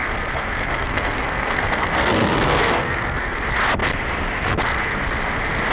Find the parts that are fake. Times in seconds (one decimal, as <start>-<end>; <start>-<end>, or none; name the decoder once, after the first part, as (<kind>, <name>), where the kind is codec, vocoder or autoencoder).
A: 0.0-3.4 (codec, SNAC)

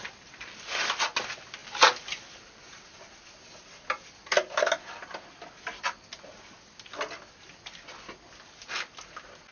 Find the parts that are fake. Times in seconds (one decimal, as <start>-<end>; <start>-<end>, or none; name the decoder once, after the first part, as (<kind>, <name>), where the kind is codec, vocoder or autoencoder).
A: none

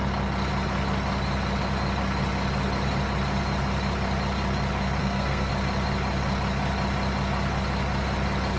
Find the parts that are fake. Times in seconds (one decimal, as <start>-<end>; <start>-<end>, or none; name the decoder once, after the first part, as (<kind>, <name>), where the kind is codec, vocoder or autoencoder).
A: 5.0-5.5 (codec, SNAC)

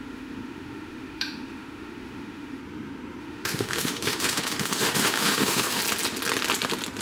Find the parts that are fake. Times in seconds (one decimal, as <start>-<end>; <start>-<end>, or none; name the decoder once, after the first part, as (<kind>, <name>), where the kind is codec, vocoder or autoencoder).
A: 0.0-2.6 (autoencoder, DAC-VAE); 3.2-5.8

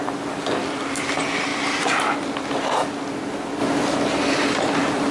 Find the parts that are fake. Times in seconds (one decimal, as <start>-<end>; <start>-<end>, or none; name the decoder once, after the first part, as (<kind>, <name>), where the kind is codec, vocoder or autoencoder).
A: none